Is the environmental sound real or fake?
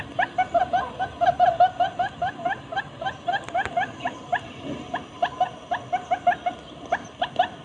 real